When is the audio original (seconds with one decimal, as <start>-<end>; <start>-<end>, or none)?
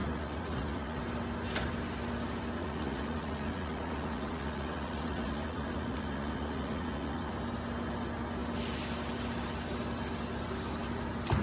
1.0-2.6; 7.3-11.4